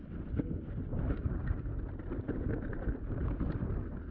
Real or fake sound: real